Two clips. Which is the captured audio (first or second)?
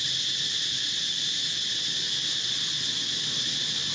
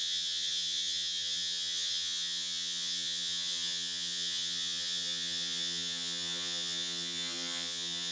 first